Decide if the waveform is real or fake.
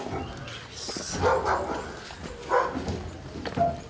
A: real